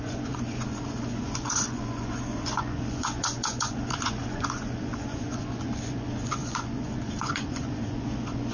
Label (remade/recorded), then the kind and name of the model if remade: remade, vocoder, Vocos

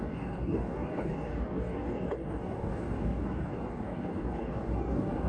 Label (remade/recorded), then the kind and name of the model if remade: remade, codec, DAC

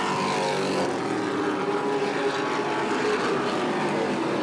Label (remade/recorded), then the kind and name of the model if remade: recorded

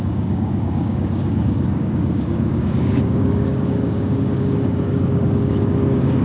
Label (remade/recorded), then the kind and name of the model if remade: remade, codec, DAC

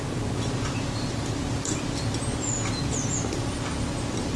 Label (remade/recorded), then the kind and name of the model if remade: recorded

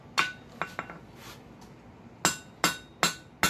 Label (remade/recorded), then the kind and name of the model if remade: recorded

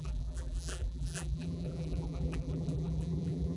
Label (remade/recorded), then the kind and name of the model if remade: remade, vocoder, BigVGAN v2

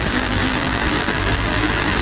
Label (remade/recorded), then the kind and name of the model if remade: remade, vocoder, BigVGAN v2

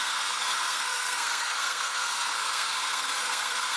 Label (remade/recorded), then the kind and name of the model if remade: remade, codec, SNAC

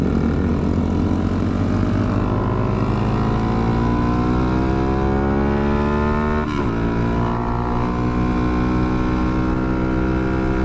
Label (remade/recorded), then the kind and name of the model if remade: recorded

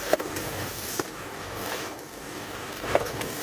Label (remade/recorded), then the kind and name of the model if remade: remade, codec, DAC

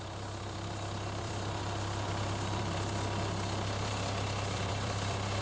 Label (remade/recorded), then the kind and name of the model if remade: remade, vocoder, BigVGAN v2